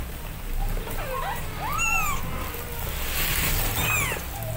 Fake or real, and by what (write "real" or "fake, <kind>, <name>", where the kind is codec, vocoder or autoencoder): real